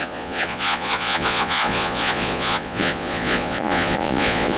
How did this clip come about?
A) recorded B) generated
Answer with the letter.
B